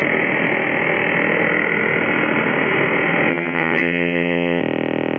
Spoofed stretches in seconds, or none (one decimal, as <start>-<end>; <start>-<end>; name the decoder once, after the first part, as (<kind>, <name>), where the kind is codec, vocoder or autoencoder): 3.3-4.6 (vocoder, HiFi-GAN)